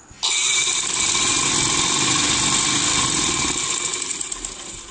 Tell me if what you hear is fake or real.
real